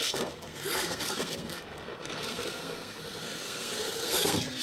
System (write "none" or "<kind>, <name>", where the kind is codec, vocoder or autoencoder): codec, SNAC